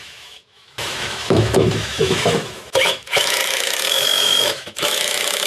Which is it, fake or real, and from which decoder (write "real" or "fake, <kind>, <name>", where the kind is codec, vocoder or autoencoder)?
fake, autoencoder, DAC-VAE